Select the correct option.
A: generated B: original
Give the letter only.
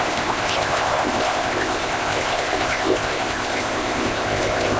A